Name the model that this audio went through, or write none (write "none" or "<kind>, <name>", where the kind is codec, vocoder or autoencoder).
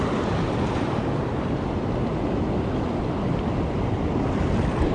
none